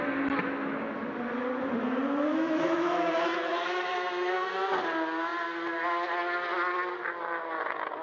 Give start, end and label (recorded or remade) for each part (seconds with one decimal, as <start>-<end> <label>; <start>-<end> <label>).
0.0-2.3 recorded; 2.3-4.7 remade; 4.7-8.0 recorded